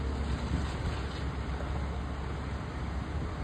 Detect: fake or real real